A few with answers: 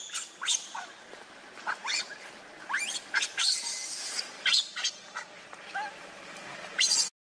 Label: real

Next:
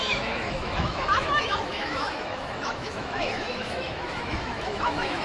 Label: fake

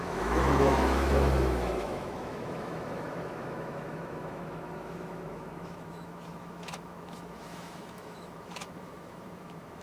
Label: fake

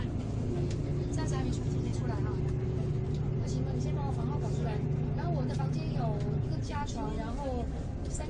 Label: real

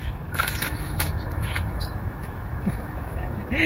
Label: fake